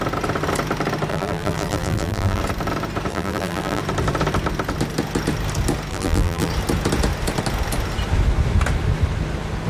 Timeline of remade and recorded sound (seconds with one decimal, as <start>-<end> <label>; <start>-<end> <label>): 0.0-1.1 recorded; 1.1-2.4 remade; 2.4-3.1 recorded; 3.1-3.8 remade; 3.8-5.9 recorded; 5.9-6.5 remade; 6.5-9.7 recorded